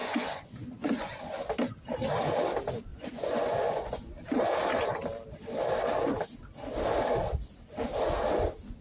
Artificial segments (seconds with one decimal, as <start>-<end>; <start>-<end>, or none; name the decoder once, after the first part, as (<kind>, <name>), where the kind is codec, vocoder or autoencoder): 0.0-1.3 (vocoder, Vocos); 2.9-4.0